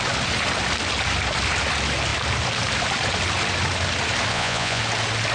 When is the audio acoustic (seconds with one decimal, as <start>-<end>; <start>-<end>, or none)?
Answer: 0.0-4.3; 4.8-5.3